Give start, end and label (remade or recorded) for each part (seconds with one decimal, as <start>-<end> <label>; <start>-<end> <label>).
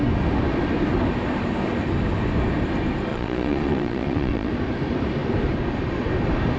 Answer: 0.0-3.1 recorded; 3.1-4.5 remade; 4.5-6.6 recorded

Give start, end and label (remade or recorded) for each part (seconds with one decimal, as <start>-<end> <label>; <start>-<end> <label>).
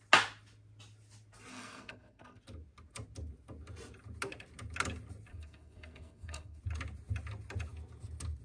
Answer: 0.0-1.5 recorded; 1.5-2.4 remade; 2.4-5.3 recorded; 5.3-6.6 remade; 6.6-8.4 recorded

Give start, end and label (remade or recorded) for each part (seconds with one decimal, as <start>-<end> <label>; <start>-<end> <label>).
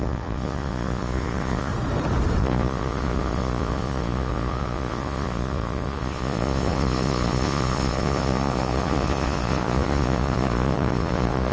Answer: 0.0-1.7 remade; 1.7-2.4 recorded; 2.4-11.5 remade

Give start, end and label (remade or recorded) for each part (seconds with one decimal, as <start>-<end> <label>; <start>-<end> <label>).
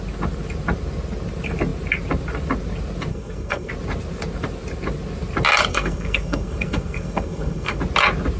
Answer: 0.0-3.1 recorded; 3.1-3.7 remade; 3.7-5.7 recorded; 5.7-7.8 remade; 7.8-8.4 recorded